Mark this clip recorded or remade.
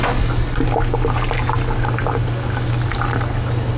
recorded